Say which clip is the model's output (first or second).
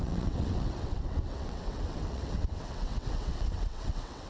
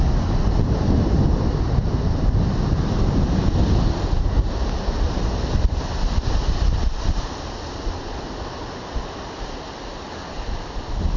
first